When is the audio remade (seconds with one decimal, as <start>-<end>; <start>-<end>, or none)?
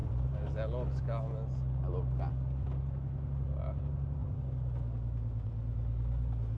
none